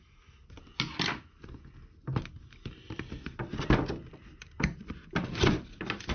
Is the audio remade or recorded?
recorded